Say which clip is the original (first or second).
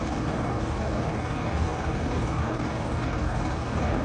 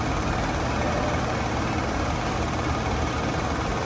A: second